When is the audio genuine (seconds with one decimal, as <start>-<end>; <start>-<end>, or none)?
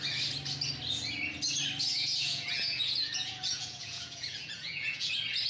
0.0-1.9; 5.1-5.5